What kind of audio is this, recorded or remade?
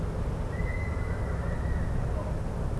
recorded